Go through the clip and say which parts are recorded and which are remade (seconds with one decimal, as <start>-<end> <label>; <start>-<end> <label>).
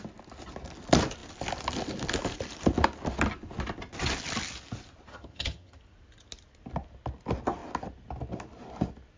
0.0-5.1 recorded; 5.1-5.8 remade; 5.8-9.2 recorded